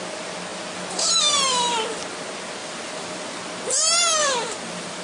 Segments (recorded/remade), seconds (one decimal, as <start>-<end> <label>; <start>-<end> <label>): 0.0-2.6 recorded; 2.6-3.4 remade; 3.4-4.2 recorded; 4.2-5.0 remade

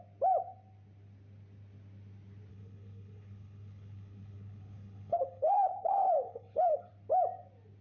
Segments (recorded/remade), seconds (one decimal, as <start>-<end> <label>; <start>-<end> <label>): 0.0-2.5 recorded; 2.5-6.9 remade; 6.9-7.8 recorded

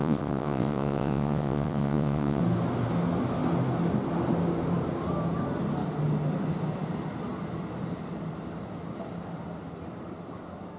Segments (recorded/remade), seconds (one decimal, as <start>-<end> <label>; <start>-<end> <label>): 0.0-2.4 remade; 2.4-10.8 recorded

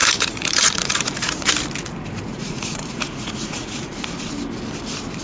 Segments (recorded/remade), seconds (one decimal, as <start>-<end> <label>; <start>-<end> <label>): 0.0-1.5 remade; 1.5-2.3 recorded; 2.3-4.3 remade; 4.3-5.2 recorded